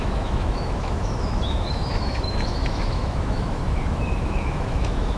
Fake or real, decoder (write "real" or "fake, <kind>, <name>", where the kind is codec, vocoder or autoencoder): fake, autoencoder, DAC-VAE